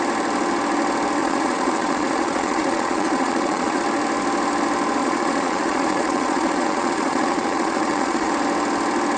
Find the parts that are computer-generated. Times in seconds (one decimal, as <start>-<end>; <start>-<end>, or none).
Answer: 1.2-3.8; 5.0-8.3